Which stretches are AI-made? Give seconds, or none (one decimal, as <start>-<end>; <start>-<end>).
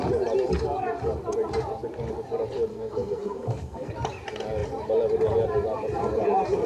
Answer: 2.7-3.9